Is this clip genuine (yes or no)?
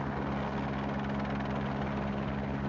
yes